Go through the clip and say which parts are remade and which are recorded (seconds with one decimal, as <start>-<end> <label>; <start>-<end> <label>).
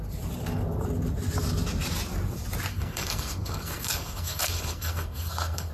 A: 0.0-2.7 recorded; 2.7-5.7 remade